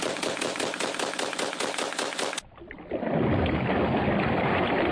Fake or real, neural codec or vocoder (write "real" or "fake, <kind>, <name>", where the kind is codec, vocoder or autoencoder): real